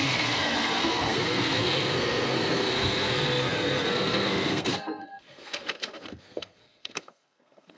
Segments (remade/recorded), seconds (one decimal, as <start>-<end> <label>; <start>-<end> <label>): 0.0-7.8 remade